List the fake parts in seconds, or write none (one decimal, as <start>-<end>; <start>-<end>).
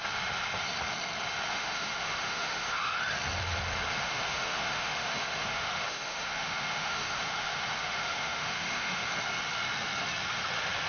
1.5-3.0; 4.0-9.1